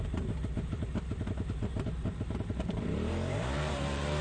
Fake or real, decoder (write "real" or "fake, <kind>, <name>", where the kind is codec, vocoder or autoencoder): fake, vocoder, BigVGAN v2